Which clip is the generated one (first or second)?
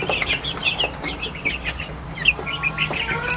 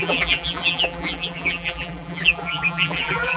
second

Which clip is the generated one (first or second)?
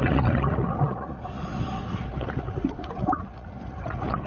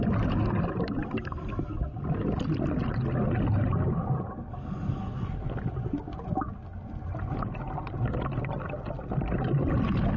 first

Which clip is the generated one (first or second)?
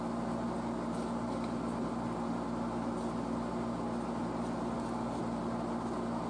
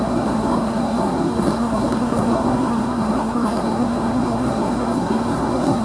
second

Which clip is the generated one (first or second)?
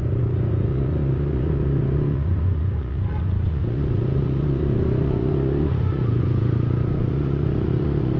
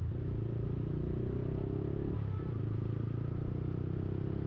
first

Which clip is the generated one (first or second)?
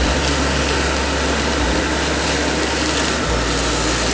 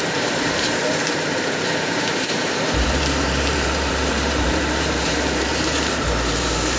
second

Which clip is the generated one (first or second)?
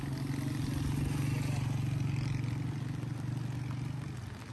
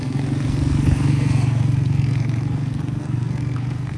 second